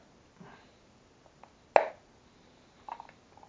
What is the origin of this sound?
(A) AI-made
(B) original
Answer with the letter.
B